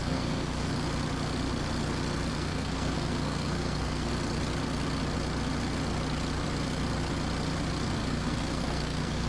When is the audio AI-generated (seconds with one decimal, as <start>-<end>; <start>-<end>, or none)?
0.0-0.7; 2.3-4.1; 8.0-9.3